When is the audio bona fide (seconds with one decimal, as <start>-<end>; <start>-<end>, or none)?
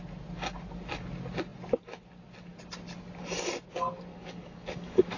0.0-4.1